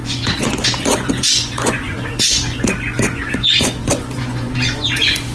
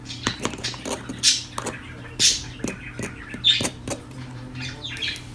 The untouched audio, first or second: second